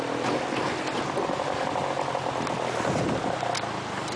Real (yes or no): yes